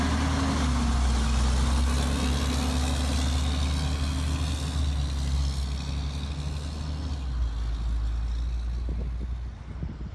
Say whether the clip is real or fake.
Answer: real